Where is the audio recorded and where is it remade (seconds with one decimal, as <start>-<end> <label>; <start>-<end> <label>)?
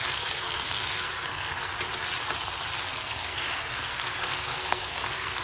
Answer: 0.0-1.7 remade; 1.7-2.9 recorded; 2.9-5.4 remade